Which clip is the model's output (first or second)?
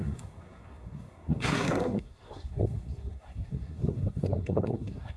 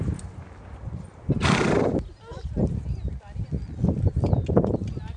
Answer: first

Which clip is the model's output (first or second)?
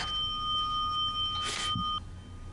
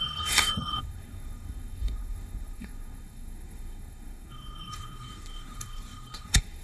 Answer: second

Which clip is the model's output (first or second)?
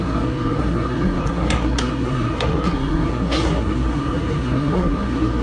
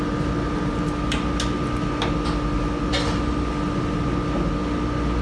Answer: first